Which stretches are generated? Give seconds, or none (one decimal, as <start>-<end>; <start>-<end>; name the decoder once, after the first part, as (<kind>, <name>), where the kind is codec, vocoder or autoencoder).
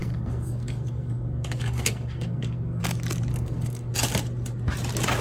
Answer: 0.0-2.8 (codec, SNAC); 3.3-3.9